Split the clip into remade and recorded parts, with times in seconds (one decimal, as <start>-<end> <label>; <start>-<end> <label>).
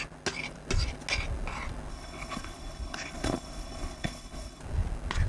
0.0-1.9 recorded; 1.9-4.6 remade; 4.6-5.3 recorded